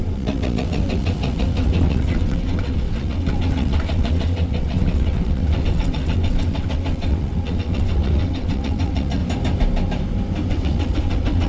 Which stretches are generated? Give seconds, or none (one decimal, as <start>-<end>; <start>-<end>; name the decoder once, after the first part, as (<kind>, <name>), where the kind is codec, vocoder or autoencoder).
0.0-9.2 (vocoder, WaveNeXt); 10.5-11.5